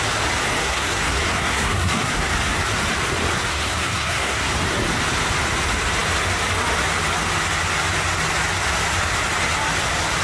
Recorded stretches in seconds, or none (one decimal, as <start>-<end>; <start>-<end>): 0.0-0.6; 2.3-3.5; 4.5-10.2